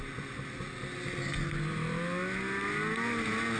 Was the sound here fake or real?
real